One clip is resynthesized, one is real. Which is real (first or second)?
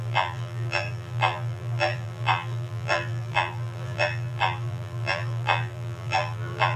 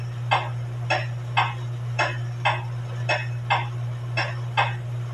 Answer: second